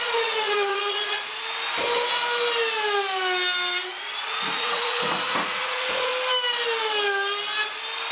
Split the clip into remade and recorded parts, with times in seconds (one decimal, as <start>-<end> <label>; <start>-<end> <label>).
0.0-1.3 remade; 1.3-4.2 recorded; 4.2-6.1 remade; 6.1-8.1 recorded